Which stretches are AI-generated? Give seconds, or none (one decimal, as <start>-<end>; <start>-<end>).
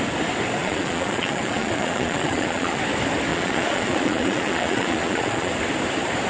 0.6-2.8; 3.3-5.5